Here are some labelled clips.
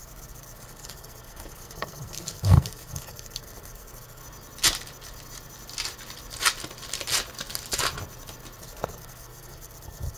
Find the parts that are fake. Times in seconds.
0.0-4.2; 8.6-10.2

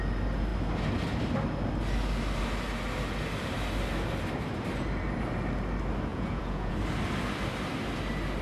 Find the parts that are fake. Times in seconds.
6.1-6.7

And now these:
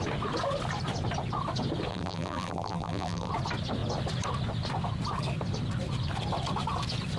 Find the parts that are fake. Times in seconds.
1.9-3.3

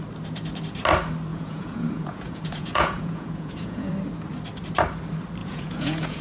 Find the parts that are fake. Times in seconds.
1.3-3.9; 5.4-6.2